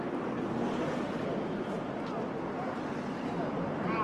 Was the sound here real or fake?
real